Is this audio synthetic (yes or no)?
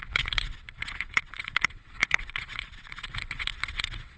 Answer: yes